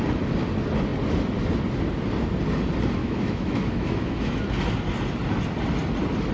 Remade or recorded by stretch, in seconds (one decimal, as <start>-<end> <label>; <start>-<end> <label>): 0.0-3.0 recorded; 3.0-4.4 remade; 4.4-6.3 recorded